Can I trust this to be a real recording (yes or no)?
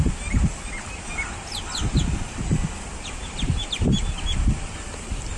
yes